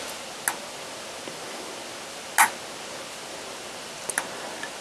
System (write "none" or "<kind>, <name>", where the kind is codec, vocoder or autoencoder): none